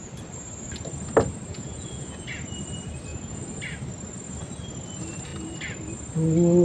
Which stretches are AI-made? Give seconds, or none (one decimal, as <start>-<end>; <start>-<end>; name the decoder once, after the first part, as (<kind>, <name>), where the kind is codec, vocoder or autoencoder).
1.5-2.3 (vocoder, Vocos); 3.1-3.6